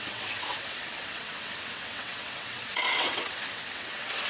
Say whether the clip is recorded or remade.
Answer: remade